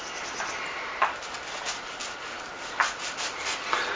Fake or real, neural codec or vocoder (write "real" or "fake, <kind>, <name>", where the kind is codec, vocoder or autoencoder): real